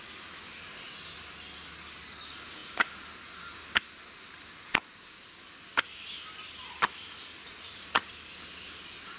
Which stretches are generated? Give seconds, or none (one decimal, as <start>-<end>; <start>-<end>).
7.4-8.1